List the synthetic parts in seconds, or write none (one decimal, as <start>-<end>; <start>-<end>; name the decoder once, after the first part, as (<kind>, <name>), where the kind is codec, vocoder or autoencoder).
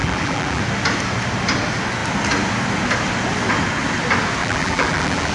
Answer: 0.0-0.6 (vocoder, BigVGAN v2); 4.4-5.3